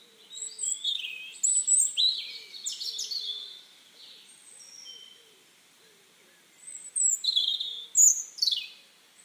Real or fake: real